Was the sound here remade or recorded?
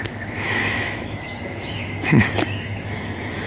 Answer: remade